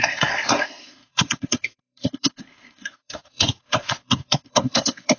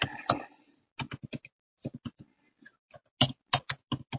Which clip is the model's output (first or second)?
first